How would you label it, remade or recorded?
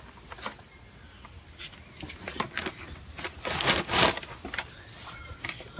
recorded